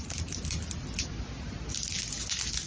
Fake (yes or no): no